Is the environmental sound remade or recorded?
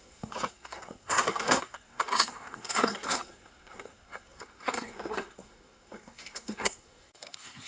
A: remade